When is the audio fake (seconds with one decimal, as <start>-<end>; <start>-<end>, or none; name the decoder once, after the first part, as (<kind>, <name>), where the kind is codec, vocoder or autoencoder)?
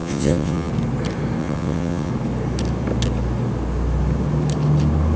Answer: 0.0-0.7 (vocoder, WaveNeXt); 1.4-2.1